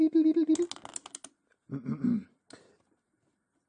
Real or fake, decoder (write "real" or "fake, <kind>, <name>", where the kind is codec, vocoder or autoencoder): real